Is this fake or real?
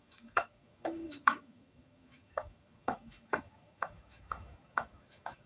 fake